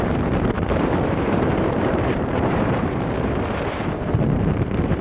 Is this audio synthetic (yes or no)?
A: yes